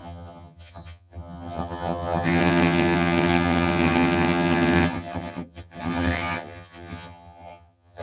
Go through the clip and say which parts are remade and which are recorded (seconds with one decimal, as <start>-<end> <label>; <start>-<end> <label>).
0.0-8.0 remade